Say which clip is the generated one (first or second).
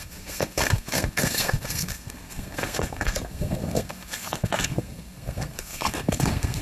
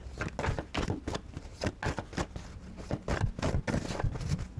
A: first